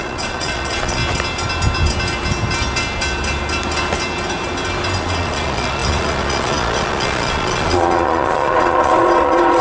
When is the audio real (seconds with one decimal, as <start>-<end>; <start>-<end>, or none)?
1.0-5.0